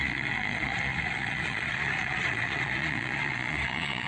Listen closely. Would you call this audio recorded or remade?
remade